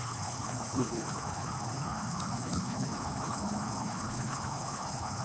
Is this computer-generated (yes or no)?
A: yes